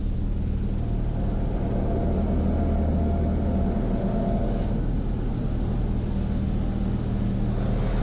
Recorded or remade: recorded